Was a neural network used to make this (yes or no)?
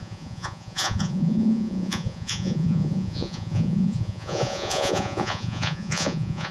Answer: yes